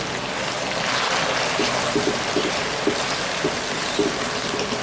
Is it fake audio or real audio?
real